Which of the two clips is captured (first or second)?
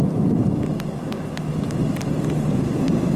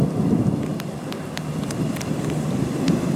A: first